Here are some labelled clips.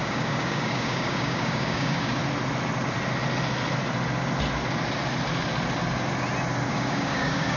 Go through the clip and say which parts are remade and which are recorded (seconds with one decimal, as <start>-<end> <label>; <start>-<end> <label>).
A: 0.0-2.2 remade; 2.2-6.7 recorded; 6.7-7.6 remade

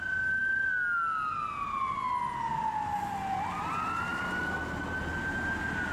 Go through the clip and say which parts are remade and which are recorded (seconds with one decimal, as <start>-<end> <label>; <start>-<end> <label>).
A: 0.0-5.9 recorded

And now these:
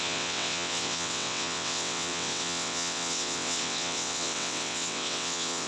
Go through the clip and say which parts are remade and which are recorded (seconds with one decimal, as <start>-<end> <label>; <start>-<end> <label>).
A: 0.0-5.7 remade

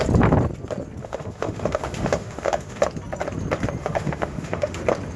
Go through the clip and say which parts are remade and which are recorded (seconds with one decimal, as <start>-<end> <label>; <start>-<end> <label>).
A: 0.0-1.0 recorded; 1.0-2.8 remade; 2.8-3.8 recorded; 3.8-4.8 remade; 4.8-5.2 recorded